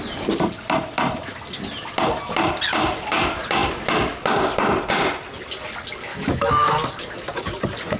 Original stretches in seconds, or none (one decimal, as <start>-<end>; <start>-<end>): 0.0-6.1; 6.7-8.0